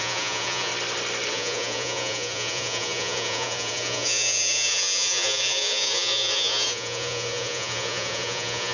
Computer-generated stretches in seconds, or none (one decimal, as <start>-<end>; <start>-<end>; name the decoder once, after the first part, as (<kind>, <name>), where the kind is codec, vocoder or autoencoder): 0.0-0.7 (vocoder, Vocos); 1.3-8.7